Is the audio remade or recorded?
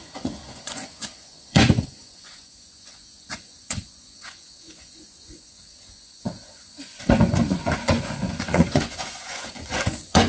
remade